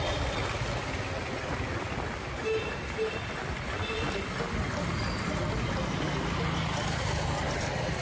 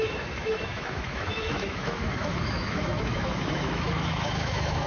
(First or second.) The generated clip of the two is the second